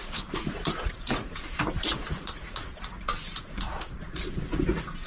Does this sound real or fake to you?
fake